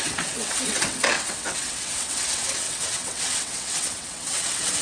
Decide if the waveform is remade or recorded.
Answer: remade